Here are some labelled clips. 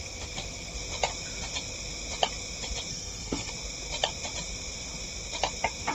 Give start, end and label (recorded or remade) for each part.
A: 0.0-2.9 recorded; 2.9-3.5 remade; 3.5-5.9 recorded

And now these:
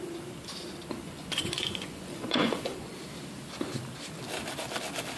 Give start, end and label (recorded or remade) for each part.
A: 0.0-1.0 recorded; 1.0-2.9 remade; 2.9-5.2 recorded

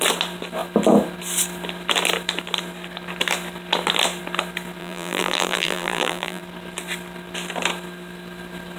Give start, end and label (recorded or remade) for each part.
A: 0.0-4.8 recorded; 4.8-6.4 remade; 6.4-8.8 recorded

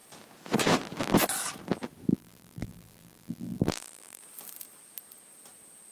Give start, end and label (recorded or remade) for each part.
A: 0.0-2.1 recorded; 2.1-4.2 remade; 4.2-5.9 recorded

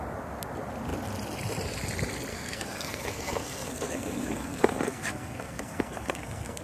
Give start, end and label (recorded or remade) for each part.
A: 0.0-2.3 recorded; 2.3-6.6 remade

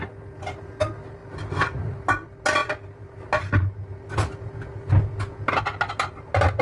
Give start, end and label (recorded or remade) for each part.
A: 0.0-6.6 recorded

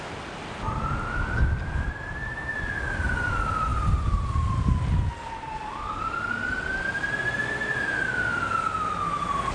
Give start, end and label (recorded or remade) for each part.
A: 0.0-9.5 recorded